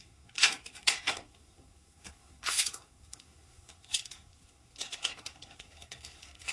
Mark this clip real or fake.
fake